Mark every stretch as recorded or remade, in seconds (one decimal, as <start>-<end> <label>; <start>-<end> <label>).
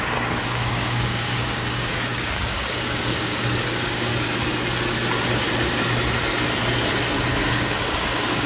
0.0-4.1 remade; 4.1-7.3 recorded; 7.3-8.5 remade